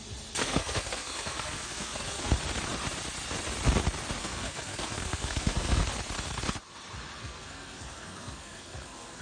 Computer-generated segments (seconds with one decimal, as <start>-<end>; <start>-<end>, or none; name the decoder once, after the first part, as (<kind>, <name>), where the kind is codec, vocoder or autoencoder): 0.4-2.3 (codec, SNAC); 4.2-5.8; 7.2-9.2